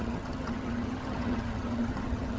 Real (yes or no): no